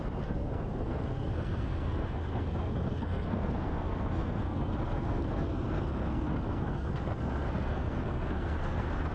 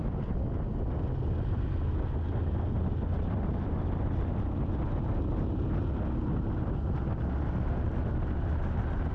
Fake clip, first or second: first